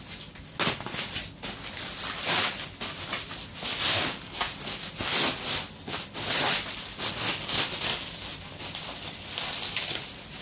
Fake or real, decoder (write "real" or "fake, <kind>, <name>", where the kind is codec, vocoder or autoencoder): real